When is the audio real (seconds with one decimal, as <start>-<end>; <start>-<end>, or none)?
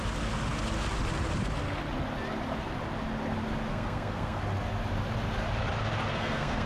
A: 0.0-3.7; 4.4-6.1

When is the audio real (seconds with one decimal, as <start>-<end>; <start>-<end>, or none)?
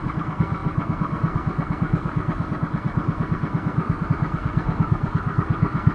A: none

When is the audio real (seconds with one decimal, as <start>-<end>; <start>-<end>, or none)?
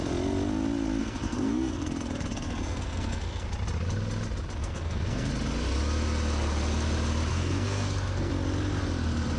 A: 0.0-1.0; 3.5-4.6; 5.3-7.3; 8.3-9.4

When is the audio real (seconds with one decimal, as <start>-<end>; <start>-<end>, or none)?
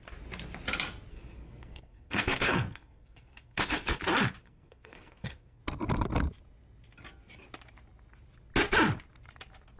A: 0.0-1.1; 4.0-4.4; 5.6-9.8